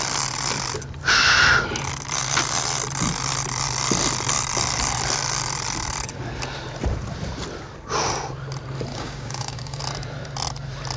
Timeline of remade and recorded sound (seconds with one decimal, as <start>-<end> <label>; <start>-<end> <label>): 0.0-8.9 recorded; 8.9-9.8 remade; 9.8-11.0 recorded